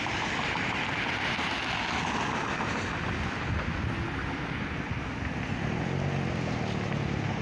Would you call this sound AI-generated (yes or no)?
no